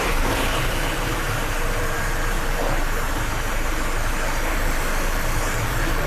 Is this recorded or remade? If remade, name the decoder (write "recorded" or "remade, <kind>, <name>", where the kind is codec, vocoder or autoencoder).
remade, vocoder, BigVGAN v2